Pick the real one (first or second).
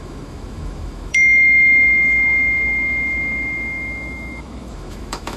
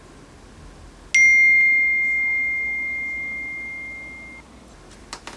second